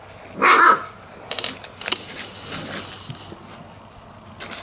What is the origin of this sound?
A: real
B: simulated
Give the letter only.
A